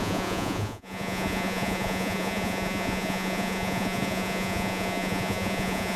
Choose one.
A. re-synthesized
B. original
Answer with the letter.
A